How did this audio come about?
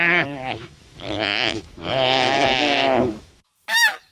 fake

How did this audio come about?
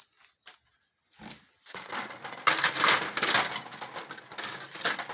real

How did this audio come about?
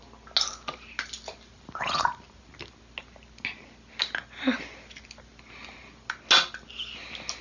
real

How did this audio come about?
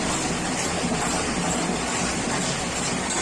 real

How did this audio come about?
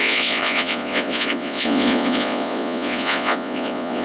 fake